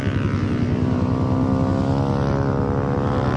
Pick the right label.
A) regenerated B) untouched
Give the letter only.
B